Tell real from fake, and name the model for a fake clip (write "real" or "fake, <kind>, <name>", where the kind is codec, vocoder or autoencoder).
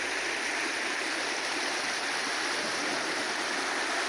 real